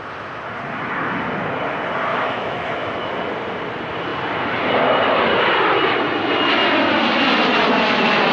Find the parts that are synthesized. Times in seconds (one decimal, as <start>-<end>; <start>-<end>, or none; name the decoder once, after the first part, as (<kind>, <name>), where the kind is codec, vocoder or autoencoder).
2.1-3.1 (autoencoder, DAC-VAE)